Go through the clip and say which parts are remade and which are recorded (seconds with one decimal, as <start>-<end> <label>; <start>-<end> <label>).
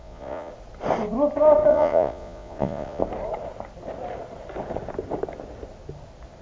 0.0-0.5 remade; 0.5-1.7 recorded; 1.7-3.0 remade; 3.0-6.4 recorded